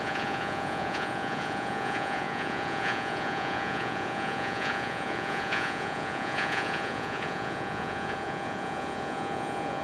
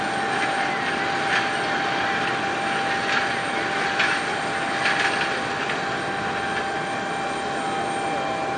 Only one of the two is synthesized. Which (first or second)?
first